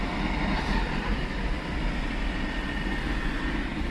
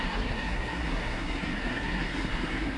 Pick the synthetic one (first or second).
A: second